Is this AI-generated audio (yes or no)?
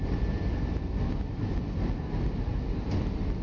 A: no